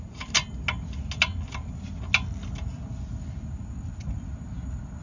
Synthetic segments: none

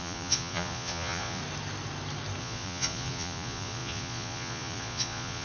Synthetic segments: 0.0-1.4 (vocoder, Vocos); 2.4-5.4